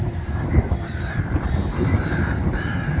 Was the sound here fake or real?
fake